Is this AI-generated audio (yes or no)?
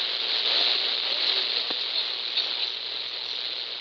no